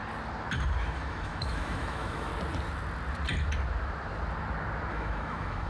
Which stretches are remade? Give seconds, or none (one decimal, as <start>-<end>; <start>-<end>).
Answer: 0.8-2.3; 4.9-5.7